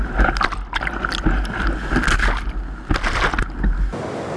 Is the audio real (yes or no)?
yes